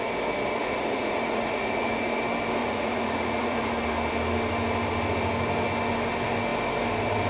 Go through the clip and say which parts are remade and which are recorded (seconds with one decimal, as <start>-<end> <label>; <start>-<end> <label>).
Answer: 0.0-0.6 recorded; 0.6-2.2 remade; 2.2-2.6 recorded; 2.6-3.7 remade; 3.7-7.3 recorded